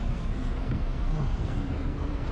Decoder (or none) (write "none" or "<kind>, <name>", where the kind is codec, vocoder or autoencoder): codec, SNAC